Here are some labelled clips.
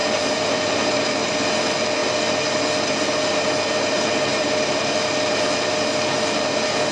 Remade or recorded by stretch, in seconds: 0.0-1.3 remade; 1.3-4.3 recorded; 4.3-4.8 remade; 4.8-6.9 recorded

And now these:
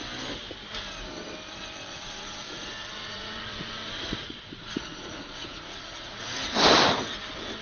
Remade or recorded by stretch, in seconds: 0.0-1.9 recorded; 1.9-6.4 remade; 6.4-7.6 recorded

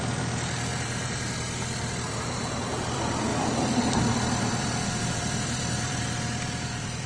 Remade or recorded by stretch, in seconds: 0.0-0.7 remade; 0.7-1.8 recorded; 1.8-7.1 remade